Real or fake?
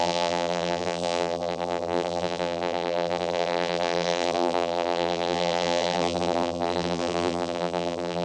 fake